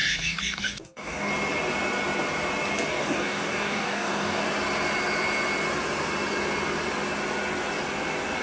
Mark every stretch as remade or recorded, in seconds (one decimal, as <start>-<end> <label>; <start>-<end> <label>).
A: 0.0-1.3 remade; 1.3-2.9 recorded; 2.9-4.4 remade; 4.4-8.4 recorded